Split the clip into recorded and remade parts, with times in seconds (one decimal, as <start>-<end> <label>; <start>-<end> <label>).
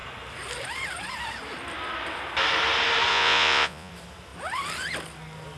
0.0-3.1 recorded; 3.1-3.9 remade; 3.9-5.6 recorded